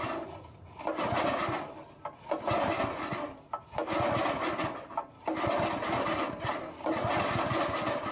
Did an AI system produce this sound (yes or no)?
no